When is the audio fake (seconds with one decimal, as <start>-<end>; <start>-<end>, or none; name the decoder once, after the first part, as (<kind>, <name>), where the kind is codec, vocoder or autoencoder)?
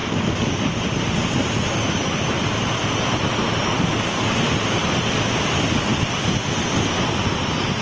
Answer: 4.8-5.9 (vocoder, BigVGAN v2)